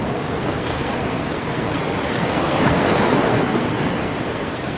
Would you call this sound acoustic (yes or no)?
no